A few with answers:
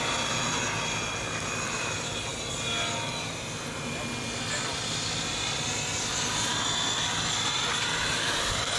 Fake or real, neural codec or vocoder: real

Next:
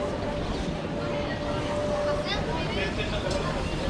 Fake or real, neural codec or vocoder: real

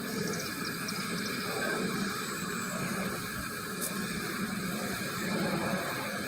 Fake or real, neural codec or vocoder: real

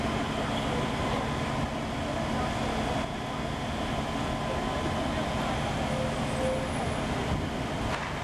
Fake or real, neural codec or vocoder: real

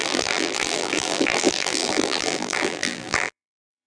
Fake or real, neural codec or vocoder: fake, vocoder, BigVGAN v2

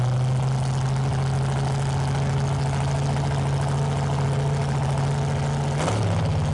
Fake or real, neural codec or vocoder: real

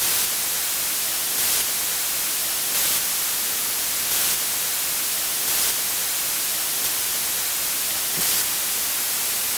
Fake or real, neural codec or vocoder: real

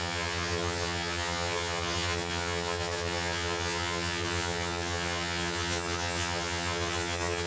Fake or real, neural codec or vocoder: fake, vocoder, HiFi-GAN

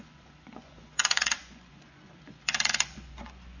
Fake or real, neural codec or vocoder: fake, vocoder, Vocos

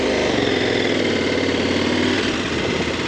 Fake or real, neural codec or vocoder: fake, vocoder, BigVGAN v2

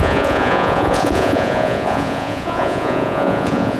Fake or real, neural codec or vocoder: fake, vocoder, Vocos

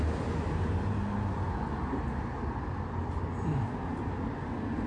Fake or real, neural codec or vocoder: real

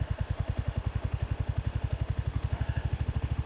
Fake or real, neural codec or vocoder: fake, autoencoder, DAC-VAE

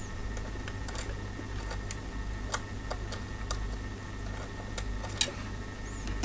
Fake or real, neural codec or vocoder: real